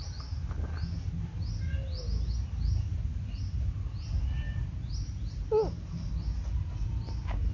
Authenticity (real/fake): real